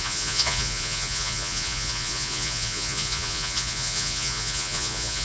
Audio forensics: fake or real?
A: fake